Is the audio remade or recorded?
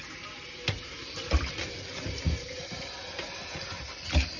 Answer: recorded